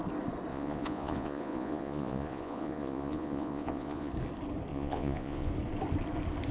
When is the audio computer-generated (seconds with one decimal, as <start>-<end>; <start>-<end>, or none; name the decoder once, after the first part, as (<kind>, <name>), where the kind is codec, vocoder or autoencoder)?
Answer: 0.5-4.1 (vocoder, Vocos); 4.7-5.5